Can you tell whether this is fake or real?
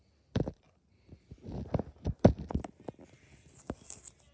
real